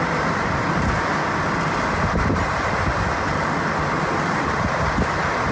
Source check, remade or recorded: recorded